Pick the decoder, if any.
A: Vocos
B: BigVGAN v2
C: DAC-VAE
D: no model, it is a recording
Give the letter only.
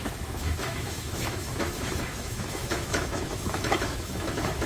C